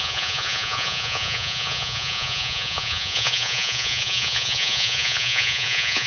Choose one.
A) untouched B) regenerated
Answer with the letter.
B